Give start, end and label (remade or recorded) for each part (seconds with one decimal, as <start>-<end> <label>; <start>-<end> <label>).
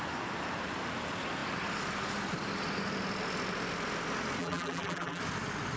0.0-4.4 recorded; 4.4-5.2 remade; 5.2-5.8 recorded